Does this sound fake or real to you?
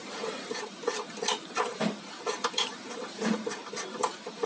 fake